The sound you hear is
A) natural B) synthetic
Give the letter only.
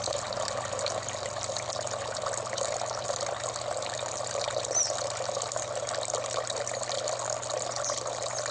A